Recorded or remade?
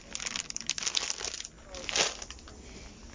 recorded